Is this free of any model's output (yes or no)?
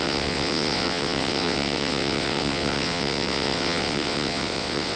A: no